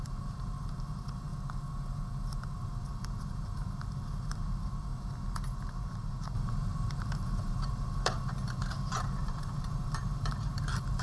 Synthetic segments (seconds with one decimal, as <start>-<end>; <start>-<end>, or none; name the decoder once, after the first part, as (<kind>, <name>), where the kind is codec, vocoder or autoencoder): 0.0-1.3 (vocoder, BigVGAN v2); 2.6-4.9; 5.6-11.0